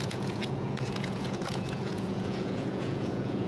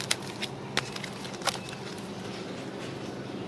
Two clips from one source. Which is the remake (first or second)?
first